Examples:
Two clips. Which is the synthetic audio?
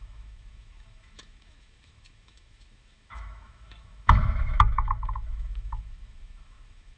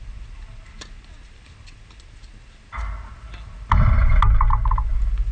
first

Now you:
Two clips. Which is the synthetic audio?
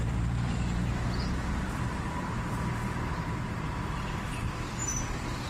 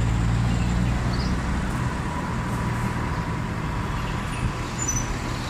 first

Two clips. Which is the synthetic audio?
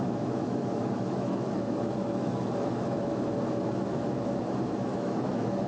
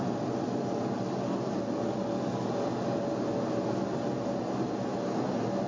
first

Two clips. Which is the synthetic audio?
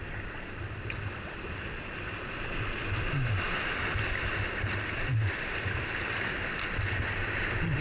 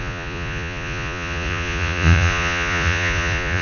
second